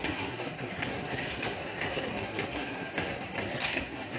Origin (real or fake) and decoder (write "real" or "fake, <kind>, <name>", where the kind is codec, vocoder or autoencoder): fake, codec, SNAC